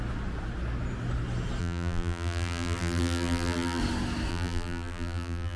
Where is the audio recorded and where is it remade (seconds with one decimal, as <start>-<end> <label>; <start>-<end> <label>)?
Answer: 0.0-1.6 recorded; 1.6-3.8 remade; 3.8-4.3 recorded; 4.3-5.6 remade